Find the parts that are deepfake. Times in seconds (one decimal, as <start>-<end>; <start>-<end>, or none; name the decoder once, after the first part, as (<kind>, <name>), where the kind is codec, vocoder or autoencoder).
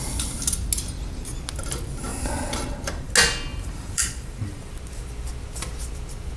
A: 2.1-3.1 (vocoder, BigVGAN v2); 3.5-4.7